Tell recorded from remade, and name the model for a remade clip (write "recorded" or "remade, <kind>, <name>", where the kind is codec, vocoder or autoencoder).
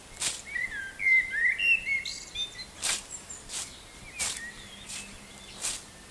recorded